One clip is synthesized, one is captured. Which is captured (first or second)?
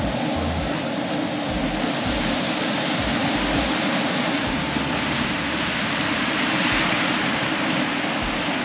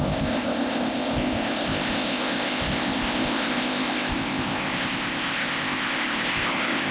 first